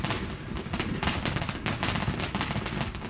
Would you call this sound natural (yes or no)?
yes